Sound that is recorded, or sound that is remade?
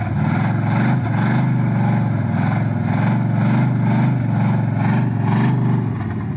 recorded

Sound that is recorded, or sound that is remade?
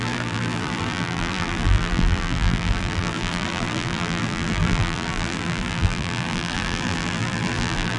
remade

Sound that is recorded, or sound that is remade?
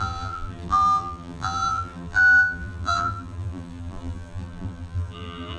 remade